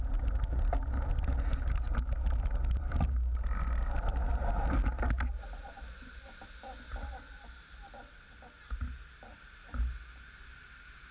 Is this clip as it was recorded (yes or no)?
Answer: yes